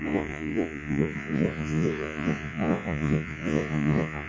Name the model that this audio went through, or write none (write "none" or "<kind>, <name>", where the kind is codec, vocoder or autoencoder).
vocoder, Vocos